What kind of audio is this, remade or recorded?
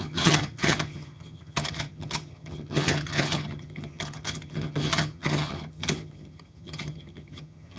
remade